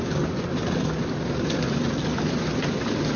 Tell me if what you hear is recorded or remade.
recorded